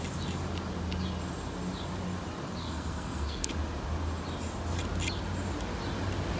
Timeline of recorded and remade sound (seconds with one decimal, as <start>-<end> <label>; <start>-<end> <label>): 0.0-2.6 recorded; 2.6-3.5 remade; 3.5-6.4 recorded